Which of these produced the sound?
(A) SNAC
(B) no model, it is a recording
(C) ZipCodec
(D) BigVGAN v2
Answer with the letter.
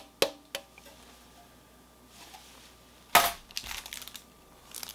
B